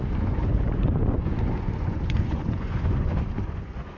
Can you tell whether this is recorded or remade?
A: remade